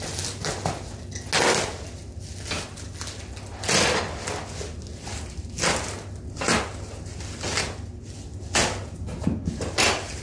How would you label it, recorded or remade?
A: recorded